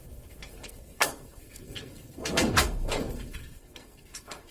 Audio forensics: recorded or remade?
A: remade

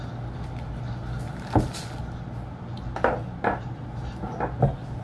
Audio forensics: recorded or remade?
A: recorded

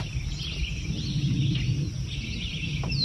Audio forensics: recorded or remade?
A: recorded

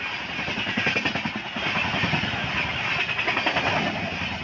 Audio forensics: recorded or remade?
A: recorded